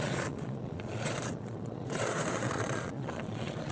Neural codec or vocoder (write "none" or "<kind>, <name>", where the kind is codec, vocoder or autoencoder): vocoder, Vocos